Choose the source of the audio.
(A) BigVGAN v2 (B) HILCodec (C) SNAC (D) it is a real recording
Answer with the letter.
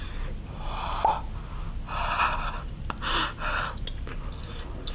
D